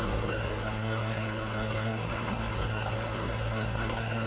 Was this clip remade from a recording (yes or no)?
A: yes